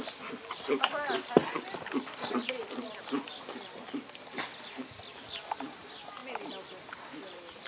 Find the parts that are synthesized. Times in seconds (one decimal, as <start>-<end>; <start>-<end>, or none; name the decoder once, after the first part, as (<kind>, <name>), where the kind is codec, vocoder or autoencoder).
none